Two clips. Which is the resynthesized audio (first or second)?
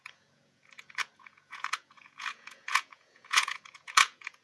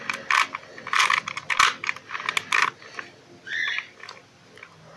first